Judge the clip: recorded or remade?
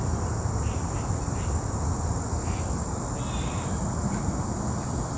recorded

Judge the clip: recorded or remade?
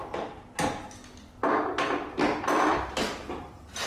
recorded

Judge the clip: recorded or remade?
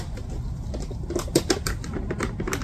recorded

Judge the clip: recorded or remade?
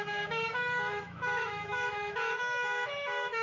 remade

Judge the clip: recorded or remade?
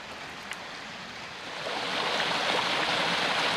recorded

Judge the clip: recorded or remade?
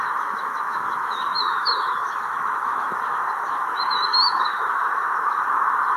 remade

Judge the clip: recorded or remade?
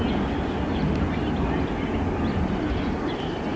recorded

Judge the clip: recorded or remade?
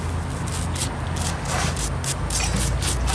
recorded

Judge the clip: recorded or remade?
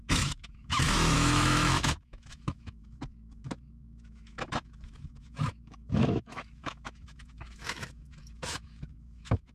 remade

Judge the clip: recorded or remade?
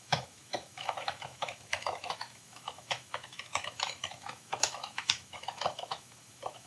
remade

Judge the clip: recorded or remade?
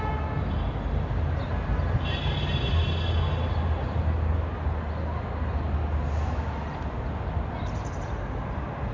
recorded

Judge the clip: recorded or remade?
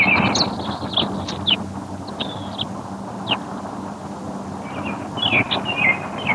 recorded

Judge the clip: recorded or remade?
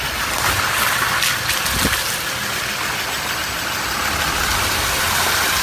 recorded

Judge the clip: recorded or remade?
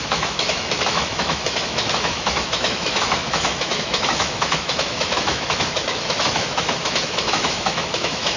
remade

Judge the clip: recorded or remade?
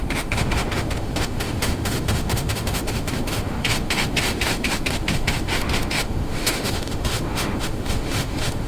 remade